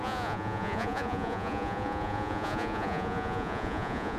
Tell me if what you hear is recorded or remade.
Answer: remade